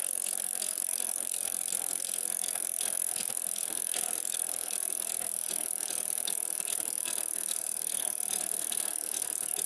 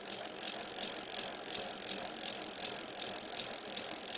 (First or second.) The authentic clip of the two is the second